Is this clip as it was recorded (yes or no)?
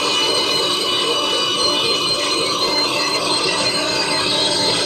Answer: no